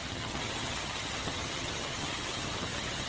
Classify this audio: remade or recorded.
remade